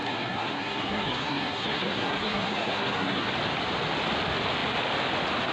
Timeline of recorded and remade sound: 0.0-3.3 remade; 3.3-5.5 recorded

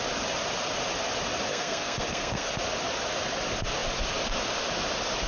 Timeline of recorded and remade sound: 0.0-1.5 recorded; 1.5-2.5 remade; 2.5-5.3 recorded

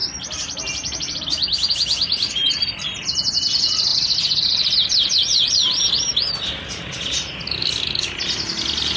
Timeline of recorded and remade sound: 0.0-9.0 recorded

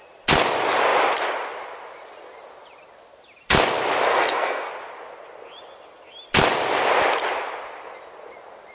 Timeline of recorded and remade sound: 0.0-4.1 recorded; 4.1-4.7 remade; 4.7-8.7 recorded

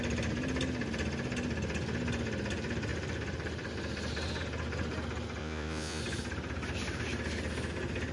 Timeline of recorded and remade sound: 0.0-5.4 recorded; 5.4-6.0 remade; 6.0-8.1 recorded

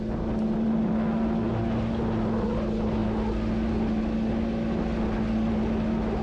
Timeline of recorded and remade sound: 0.0-6.2 recorded